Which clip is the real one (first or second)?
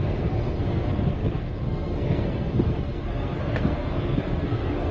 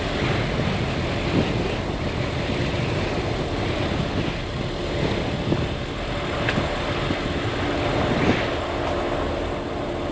second